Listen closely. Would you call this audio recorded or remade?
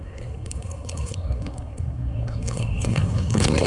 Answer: remade